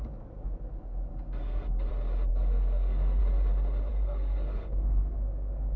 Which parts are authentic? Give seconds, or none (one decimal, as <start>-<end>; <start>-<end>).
0.0-1.1; 1.9-2.3; 3.2-3.9